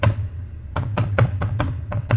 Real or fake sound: fake